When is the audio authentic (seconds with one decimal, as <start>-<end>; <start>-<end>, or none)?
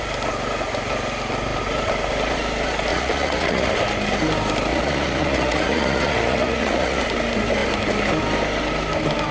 0.0-2.9; 3.7-4.7; 7.0-9.3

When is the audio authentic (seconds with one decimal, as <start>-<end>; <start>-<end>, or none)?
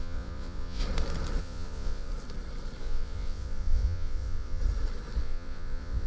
0.8-1.4; 2.1-2.8; 4.6-5.2